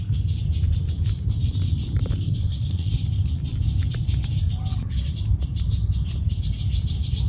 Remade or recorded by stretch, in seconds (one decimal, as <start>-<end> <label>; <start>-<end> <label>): 0.0-2.2 recorded; 2.2-2.9 remade; 2.9-7.3 recorded